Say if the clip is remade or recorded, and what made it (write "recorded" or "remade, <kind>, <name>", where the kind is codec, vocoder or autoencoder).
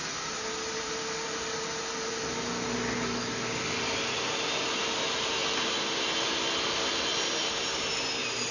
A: recorded